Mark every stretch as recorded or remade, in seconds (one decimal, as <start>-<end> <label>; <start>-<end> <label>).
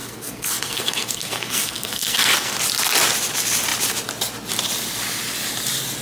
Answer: 0.0-2.6 remade; 2.6-6.0 recorded